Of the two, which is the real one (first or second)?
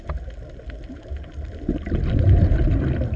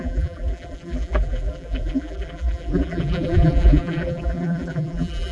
first